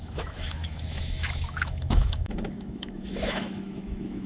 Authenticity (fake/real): fake